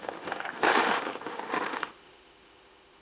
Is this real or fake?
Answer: fake